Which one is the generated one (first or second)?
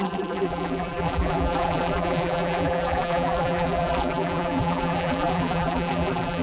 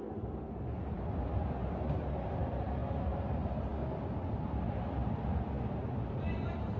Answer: first